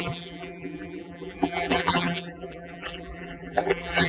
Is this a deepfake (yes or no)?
yes